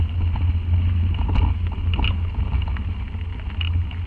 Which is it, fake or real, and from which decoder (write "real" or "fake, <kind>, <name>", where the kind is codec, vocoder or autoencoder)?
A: real